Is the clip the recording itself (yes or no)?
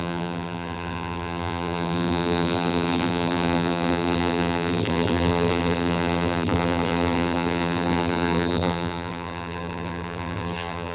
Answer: no